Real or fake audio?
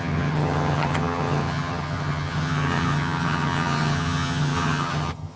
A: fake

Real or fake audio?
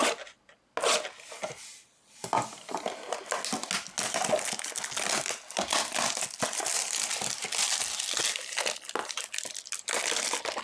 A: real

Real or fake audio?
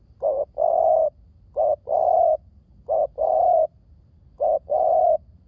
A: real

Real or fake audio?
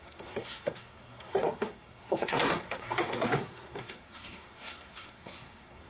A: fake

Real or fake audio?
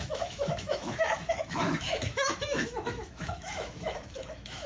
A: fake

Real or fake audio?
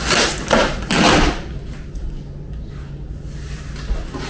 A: real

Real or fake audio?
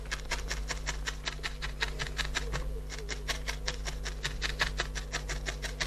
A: real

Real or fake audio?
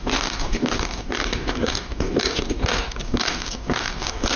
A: fake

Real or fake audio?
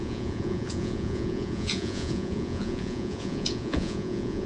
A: fake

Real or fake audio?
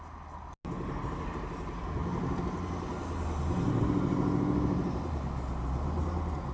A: real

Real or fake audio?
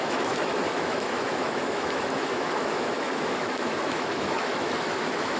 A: fake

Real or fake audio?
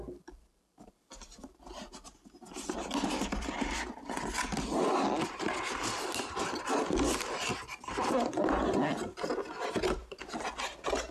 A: real